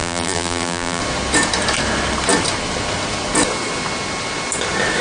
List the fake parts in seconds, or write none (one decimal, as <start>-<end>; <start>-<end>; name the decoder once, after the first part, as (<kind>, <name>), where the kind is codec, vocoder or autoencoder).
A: 0.0-1.0 (vocoder, BigVGAN v2)